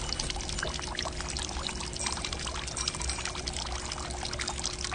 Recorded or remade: recorded